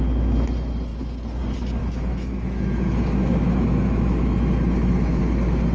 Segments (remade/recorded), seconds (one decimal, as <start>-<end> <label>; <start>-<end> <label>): 0.0-1.8 recorded; 1.8-5.2 remade; 5.2-5.7 recorded